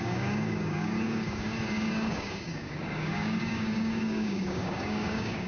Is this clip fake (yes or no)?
yes